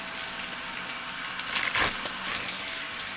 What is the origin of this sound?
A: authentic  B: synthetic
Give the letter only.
A